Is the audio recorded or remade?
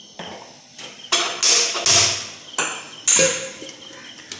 recorded